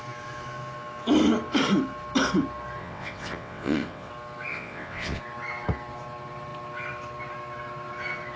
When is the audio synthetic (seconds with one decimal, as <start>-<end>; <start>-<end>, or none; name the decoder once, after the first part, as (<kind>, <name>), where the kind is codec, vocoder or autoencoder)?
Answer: 2.8-4.1 (vocoder, WaveNeXt); 4.5-5.2